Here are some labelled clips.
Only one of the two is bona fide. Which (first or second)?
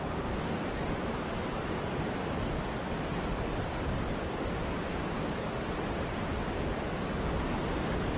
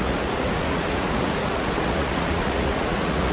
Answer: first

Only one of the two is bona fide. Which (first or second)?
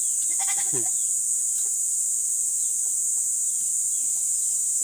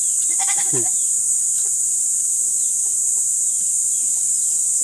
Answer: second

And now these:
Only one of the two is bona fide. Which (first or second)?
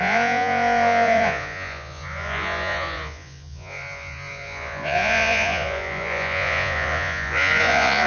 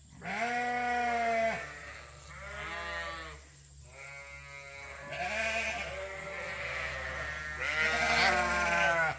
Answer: second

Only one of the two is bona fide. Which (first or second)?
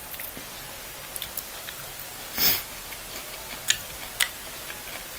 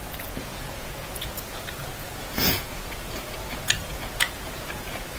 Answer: first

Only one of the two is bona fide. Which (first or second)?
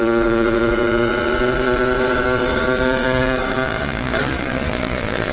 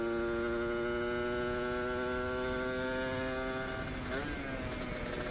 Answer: second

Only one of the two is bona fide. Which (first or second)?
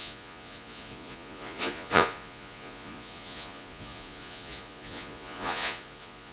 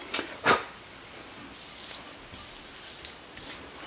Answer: second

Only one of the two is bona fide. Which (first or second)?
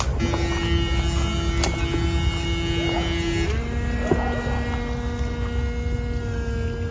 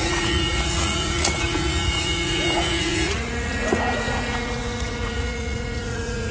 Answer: first